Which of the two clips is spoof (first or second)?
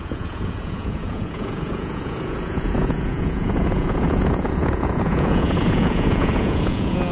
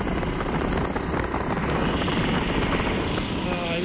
first